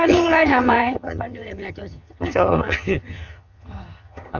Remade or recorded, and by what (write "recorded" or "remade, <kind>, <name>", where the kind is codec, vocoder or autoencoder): remade, vocoder, HiFi-GAN